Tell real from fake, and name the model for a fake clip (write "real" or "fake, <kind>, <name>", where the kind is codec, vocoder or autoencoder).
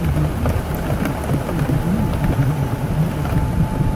real